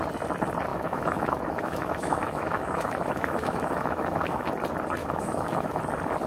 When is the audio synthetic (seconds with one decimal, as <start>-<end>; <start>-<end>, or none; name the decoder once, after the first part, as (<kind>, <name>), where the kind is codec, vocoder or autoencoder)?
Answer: 0.7-4.5 (autoencoder, DAC-VAE); 5.0-5.8